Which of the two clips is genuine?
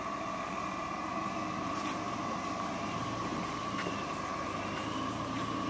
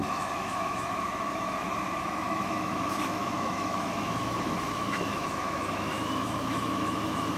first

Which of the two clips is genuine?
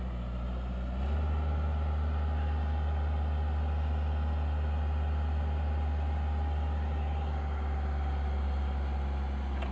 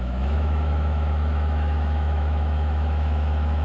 first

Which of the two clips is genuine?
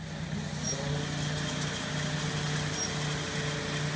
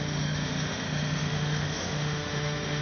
first